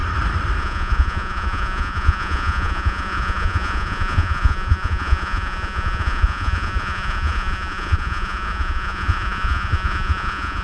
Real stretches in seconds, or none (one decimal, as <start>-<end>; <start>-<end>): 0.0-0.6